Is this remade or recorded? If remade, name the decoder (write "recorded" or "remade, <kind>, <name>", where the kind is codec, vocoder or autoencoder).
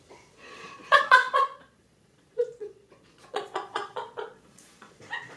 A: remade, vocoder, Vocos